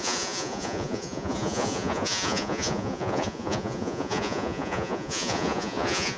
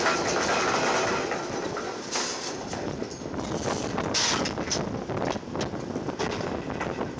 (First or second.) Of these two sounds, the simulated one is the first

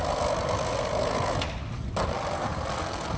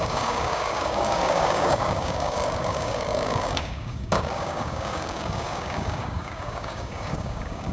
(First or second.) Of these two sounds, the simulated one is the second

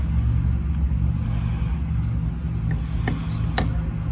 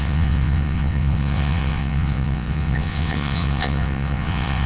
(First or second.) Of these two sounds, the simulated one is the second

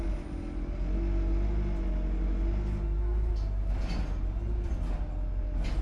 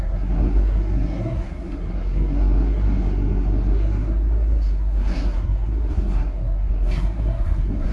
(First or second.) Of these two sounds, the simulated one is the second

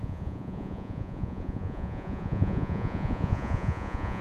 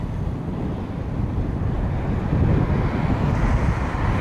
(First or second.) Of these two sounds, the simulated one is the first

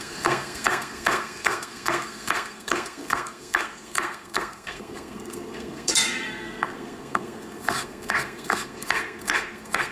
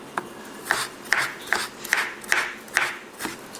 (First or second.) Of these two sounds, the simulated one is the first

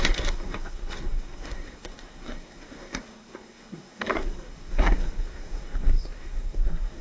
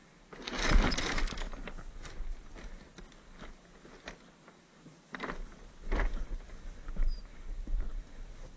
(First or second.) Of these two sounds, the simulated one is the first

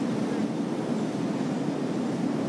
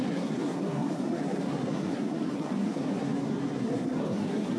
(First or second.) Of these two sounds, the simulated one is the second